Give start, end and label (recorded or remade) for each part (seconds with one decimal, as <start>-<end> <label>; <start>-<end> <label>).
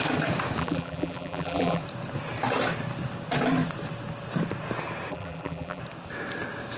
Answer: 0.0-0.6 recorded; 0.6-1.8 remade; 1.8-5.1 recorded; 5.1-5.8 remade; 5.8-6.8 recorded